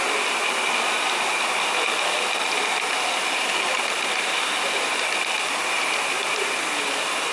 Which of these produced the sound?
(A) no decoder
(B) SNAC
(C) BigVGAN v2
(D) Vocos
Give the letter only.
A